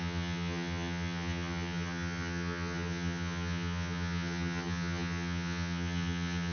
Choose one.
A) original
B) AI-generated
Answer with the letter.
B